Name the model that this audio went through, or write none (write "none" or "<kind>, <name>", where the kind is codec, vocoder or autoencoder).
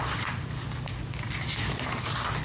none